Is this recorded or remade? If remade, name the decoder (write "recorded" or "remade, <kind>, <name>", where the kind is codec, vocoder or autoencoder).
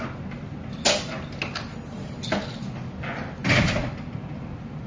recorded